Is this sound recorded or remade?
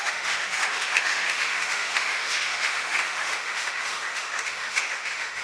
remade